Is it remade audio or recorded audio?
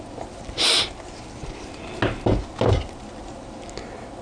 recorded